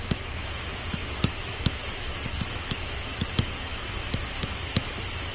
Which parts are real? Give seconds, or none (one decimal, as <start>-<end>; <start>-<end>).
none